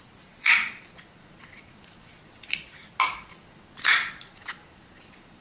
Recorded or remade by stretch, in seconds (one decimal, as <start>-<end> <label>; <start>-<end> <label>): 0.0-2.6 remade; 2.6-3.2 recorded; 3.2-5.4 remade